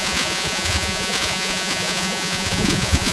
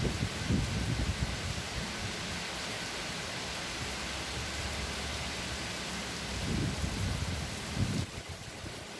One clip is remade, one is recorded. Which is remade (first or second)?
first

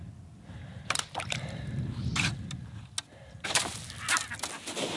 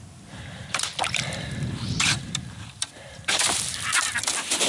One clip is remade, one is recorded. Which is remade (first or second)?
second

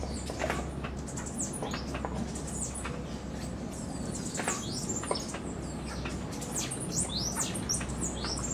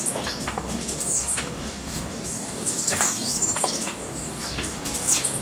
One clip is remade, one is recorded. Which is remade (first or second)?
second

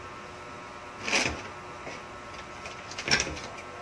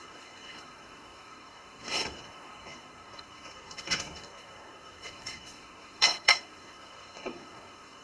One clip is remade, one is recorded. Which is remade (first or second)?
second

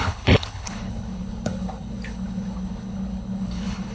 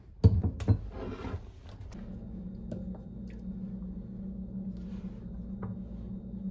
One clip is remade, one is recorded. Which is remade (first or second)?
first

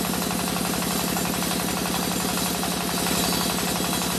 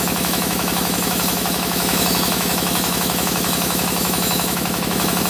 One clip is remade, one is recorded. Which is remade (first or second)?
second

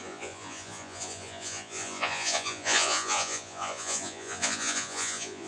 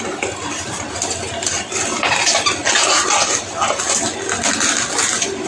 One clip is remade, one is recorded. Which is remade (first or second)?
first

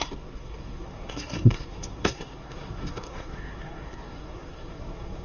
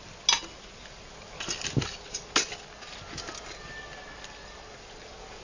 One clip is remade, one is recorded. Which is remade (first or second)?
first